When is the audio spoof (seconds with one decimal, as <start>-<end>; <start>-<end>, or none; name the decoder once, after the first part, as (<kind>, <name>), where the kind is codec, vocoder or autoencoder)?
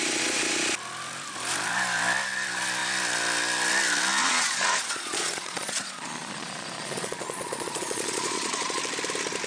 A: 4.2-8.8 (vocoder, Vocos)